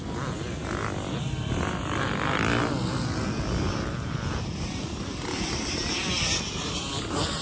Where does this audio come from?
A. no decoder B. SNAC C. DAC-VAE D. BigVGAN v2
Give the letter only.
A